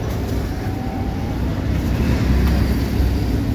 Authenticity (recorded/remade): remade